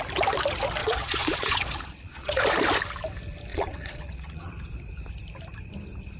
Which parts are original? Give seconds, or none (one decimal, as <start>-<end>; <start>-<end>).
0.0-0.8; 2.4-3.5; 4.5-6.2